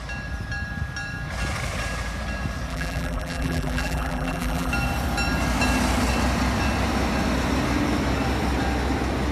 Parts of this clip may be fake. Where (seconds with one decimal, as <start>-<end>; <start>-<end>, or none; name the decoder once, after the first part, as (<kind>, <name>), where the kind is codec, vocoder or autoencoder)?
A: 2.7-4.7 (vocoder, BigVGAN v2)